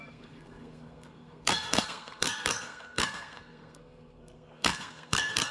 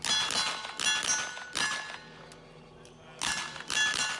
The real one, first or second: second